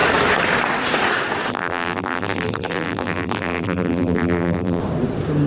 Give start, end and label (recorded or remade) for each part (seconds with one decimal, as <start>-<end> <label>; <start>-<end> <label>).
0.0-1.5 recorded; 1.5-4.8 remade; 4.8-5.5 recorded